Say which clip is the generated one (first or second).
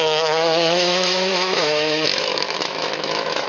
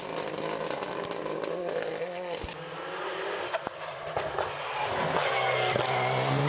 first